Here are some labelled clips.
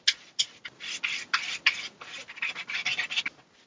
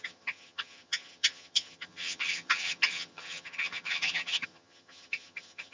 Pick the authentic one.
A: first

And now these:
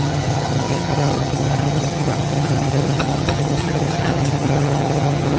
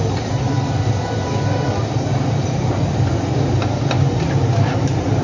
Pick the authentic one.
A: second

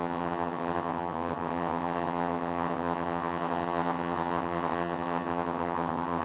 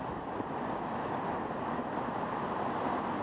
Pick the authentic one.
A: second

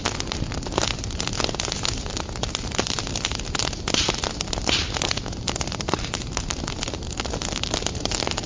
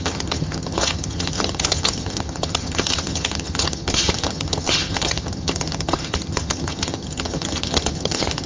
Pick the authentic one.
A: first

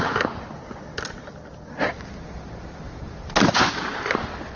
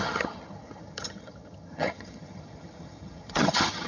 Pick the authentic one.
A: first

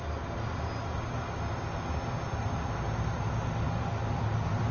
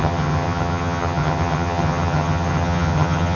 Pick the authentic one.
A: first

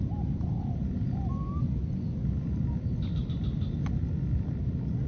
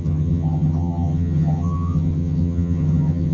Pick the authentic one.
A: first